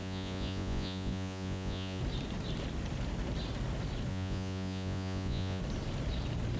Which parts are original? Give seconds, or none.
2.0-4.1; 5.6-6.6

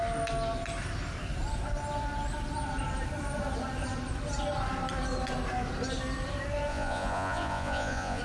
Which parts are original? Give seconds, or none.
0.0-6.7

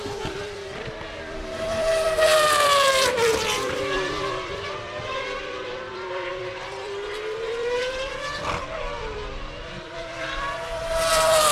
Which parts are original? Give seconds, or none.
none